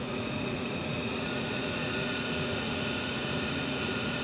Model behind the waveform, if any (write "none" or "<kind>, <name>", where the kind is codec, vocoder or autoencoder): vocoder, Vocos